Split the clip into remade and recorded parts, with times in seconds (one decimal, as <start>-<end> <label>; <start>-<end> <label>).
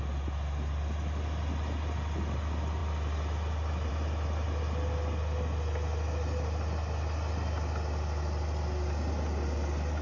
0.0-10.0 recorded